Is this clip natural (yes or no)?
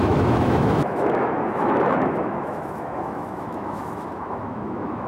no